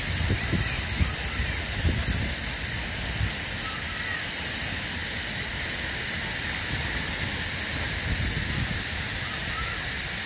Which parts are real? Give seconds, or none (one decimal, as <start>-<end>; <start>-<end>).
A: 0.0-10.3